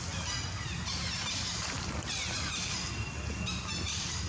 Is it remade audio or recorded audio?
recorded